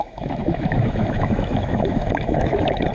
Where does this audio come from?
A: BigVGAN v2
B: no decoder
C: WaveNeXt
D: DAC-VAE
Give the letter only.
D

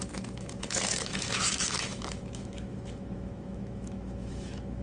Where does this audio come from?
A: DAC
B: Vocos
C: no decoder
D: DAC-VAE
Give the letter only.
D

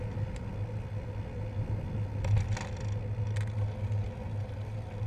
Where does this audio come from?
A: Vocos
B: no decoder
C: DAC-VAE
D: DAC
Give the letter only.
B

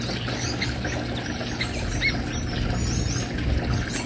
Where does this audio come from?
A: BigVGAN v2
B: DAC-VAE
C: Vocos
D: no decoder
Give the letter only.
D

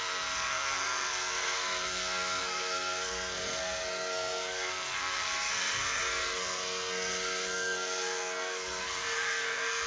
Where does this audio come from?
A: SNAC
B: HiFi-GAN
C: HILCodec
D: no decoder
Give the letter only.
A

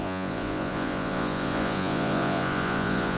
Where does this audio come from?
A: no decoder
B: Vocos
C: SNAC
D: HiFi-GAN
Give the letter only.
B